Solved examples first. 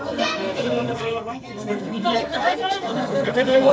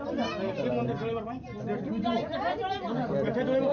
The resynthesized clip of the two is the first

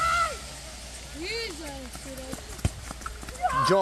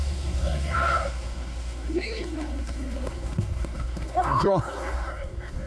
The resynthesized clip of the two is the second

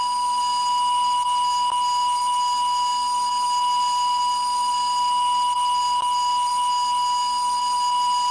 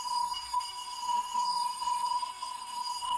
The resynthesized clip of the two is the second